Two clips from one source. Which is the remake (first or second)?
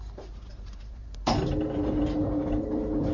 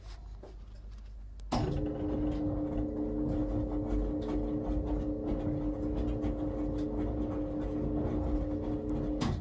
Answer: first